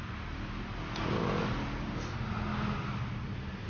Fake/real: real